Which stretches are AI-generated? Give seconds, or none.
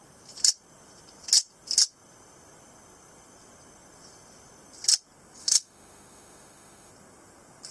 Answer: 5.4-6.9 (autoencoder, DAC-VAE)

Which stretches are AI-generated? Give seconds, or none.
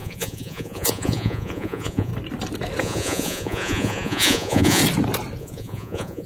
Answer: 0.0-2.1 (vocoder, Vocos); 2.8-4.8; 5.4-6.3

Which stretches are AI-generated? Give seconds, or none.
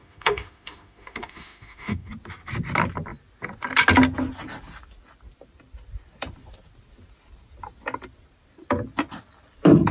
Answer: 0.0-2.1 (autoencoder, DAC-VAE)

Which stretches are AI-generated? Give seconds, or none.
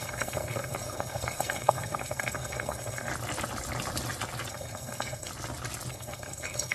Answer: 0.0-3.1 (codec, SNAC); 4.5-5.3; 5.9-6.7